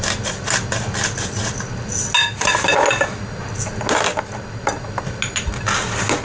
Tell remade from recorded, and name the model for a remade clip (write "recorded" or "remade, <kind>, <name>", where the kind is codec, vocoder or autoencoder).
recorded